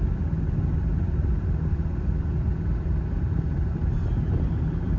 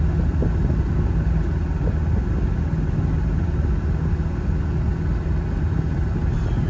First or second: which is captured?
second